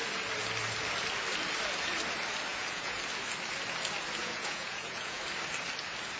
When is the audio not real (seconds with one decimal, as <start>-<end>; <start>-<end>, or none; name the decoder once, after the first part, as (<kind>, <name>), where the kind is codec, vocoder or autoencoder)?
2.5-3.0 (vocoder, Vocos); 4.2-5.2